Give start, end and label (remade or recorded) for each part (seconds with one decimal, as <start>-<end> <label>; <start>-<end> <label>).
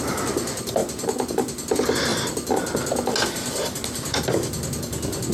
0.0-5.3 recorded